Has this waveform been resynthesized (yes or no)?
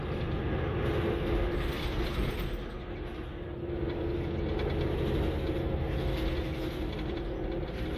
no